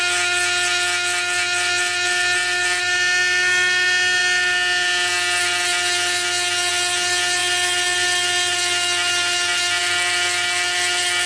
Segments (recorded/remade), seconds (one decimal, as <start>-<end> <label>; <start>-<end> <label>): 0.0-11.3 recorded